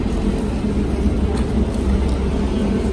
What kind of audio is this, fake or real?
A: real